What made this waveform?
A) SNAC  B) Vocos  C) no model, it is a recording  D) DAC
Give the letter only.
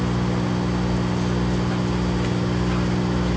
C